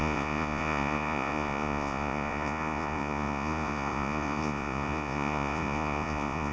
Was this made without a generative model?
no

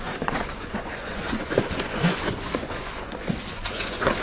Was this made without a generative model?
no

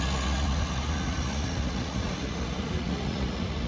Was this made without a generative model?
no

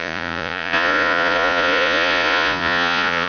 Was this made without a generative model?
no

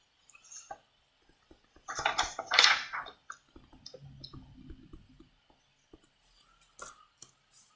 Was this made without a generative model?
yes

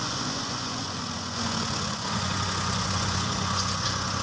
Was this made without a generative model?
no